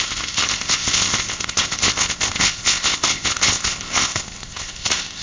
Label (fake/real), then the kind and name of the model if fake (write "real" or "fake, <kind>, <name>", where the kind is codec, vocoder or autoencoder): fake, codec, ZipCodec